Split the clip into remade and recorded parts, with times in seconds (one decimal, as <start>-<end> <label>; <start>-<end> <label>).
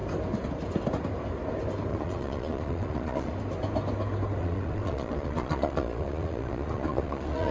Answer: 0.0-1.9 recorded; 1.9-3.3 remade; 3.3-4.4 recorded; 4.4-7.5 remade